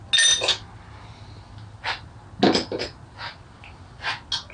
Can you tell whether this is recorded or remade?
recorded